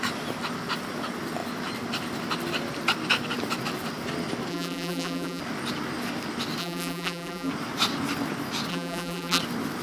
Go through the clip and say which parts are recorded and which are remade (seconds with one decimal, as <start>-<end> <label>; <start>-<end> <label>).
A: 0.0-4.5 recorded; 4.5-5.4 remade; 5.4-6.6 recorded; 6.6-7.5 remade; 7.5-8.7 recorded; 8.7-9.4 remade; 9.4-9.8 recorded